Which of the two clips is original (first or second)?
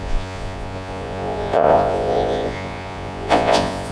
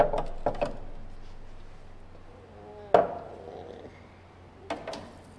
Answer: second